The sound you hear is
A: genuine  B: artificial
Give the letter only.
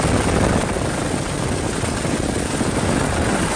A